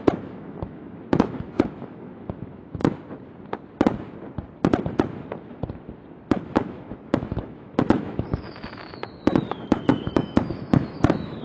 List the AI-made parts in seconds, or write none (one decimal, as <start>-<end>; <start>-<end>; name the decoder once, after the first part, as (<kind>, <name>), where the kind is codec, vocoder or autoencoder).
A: 0.0-2.8 (autoencoder, DAC-VAE); 6.3-11.4